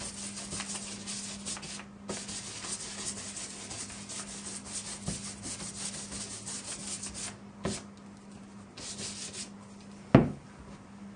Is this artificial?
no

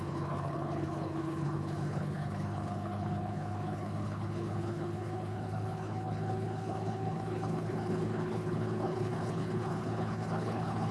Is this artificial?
yes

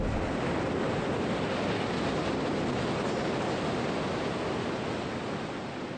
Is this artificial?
no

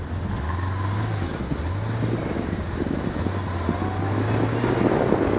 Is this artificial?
no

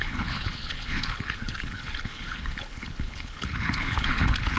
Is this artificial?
yes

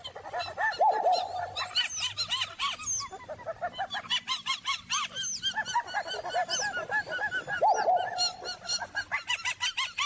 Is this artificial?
no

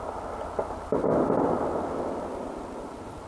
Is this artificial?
no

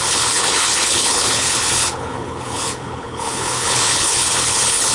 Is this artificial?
yes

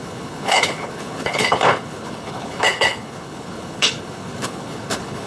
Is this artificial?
yes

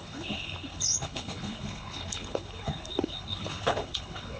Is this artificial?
yes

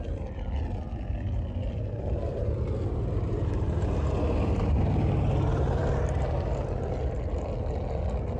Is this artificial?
no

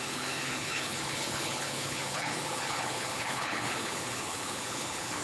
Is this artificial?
yes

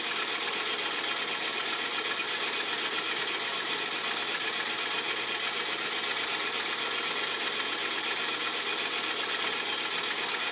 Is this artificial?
no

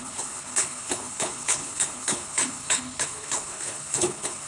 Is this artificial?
yes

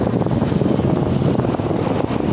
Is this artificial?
no